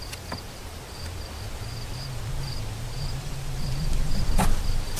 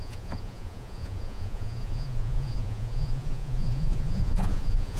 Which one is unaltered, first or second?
first